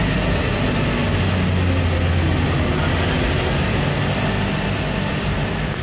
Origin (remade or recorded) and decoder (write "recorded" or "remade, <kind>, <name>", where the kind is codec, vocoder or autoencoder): recorded